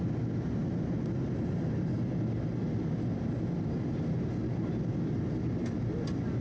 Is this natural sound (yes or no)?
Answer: yes